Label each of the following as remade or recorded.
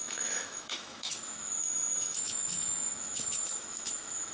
remade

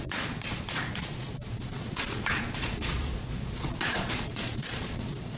remade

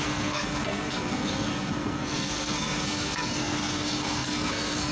remade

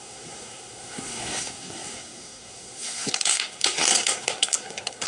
remade